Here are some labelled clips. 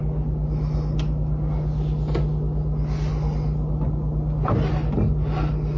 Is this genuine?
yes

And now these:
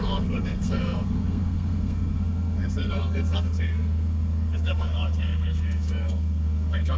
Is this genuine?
no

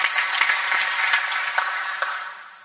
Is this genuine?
yes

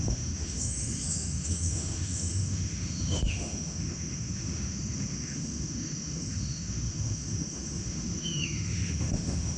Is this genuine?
no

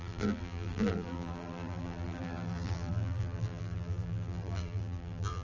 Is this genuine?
no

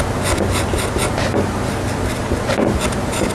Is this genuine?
yes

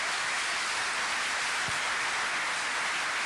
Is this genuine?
yes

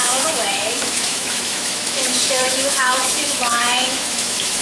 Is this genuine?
no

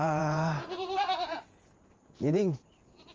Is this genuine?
no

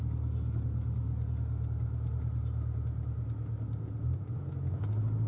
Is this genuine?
yes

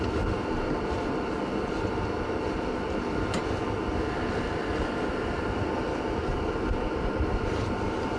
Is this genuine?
yes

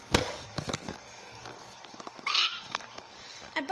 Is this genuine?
no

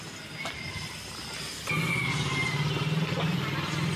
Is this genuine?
yes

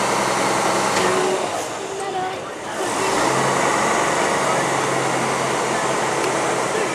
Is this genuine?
yes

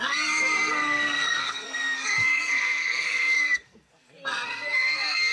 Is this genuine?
no